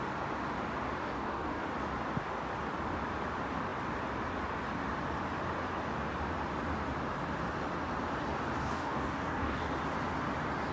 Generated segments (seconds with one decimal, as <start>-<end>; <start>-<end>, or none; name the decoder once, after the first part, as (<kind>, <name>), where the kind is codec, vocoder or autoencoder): 1.0-1.6 (codec, DAC); 8.6-9.7